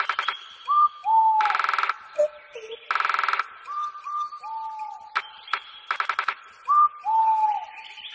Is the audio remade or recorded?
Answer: recorded